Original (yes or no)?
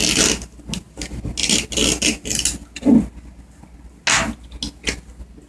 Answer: yes